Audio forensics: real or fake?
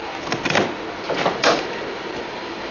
fake